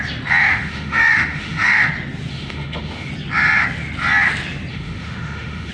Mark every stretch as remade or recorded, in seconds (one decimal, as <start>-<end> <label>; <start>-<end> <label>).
0.0-0.4 recorded; 0.4-1.9 remade; 1.9-2.3 recorded; 2.3-3.1 remade; 3.1-4.7 recorded; 4.7-5.7 remade